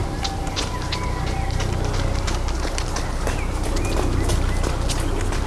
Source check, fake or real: real